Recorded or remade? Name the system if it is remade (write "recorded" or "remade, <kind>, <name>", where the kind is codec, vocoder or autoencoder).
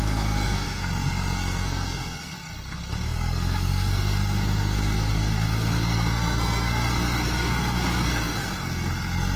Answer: remade, codec, SNAC